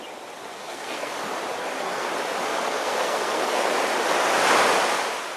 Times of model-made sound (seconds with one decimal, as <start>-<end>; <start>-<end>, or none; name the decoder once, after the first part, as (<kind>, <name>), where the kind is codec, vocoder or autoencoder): 0.5-1.1 (codec, SNAC); 1.6-2.1; 2.5-3.7